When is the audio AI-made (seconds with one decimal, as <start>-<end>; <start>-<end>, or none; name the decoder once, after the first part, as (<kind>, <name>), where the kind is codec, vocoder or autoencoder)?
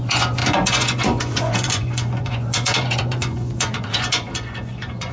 0.0-5.1 (vocoder, Vocos)